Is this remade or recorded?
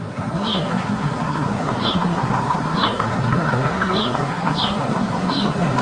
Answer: remade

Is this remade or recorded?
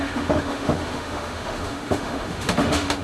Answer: remade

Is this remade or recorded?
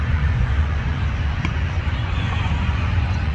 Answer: remade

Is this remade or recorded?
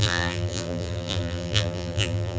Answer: remade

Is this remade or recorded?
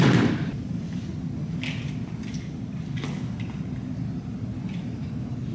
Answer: recorded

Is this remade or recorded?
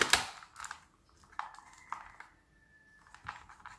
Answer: recorded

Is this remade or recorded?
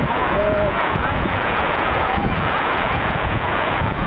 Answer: remade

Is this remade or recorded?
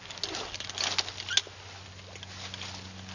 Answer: recorded